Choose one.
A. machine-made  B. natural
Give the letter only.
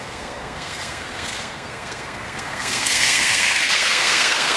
A